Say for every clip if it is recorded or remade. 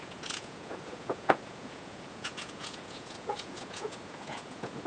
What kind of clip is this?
remade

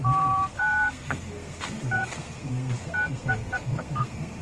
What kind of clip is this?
remade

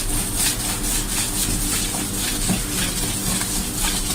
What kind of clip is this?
recorded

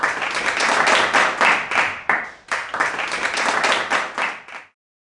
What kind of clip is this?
recorded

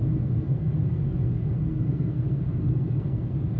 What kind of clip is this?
remade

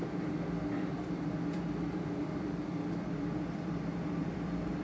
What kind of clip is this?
remade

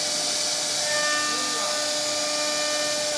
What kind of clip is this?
recorded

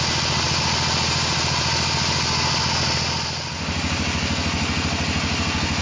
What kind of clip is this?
recorded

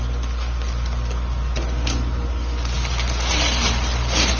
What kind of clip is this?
recorded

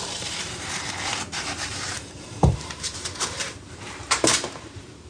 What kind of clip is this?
remade